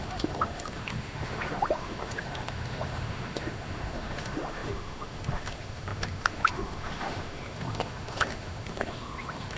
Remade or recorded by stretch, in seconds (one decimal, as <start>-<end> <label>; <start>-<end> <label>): 0.0-9.6 remade